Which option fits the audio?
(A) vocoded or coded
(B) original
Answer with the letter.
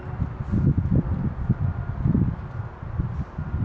B